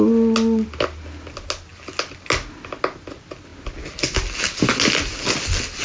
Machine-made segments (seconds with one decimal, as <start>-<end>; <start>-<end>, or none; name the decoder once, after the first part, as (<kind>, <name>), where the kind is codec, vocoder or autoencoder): none